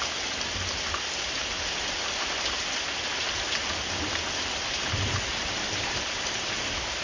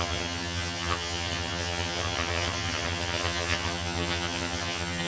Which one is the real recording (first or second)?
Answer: first